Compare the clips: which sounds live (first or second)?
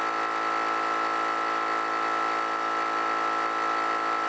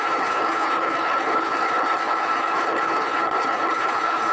first